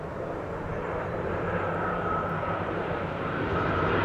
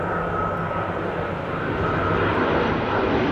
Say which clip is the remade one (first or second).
first